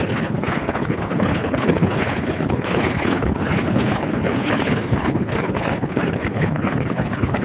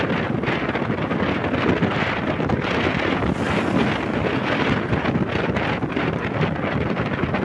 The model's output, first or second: first